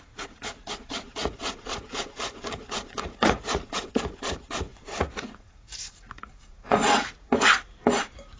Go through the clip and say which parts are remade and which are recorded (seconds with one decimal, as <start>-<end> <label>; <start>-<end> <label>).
0.0-8.4 remade